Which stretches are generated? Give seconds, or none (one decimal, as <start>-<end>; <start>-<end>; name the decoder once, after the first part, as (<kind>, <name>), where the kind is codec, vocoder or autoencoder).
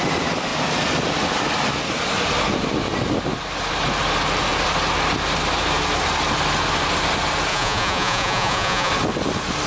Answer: 7.5-8.9 (vocoder, Vocos)